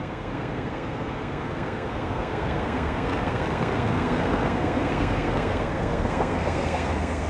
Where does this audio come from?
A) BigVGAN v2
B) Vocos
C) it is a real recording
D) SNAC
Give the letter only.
D